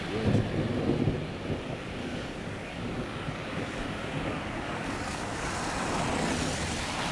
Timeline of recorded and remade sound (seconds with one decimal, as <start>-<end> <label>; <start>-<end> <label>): 0.0-2.0 recorded; 2.0-5.5 remade; 5.5-7.1 recorded